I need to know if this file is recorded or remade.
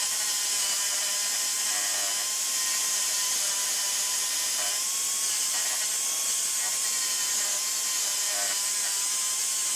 recorded